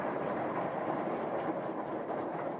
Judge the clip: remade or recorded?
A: remade